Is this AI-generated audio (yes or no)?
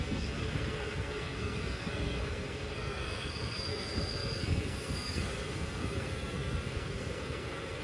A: yes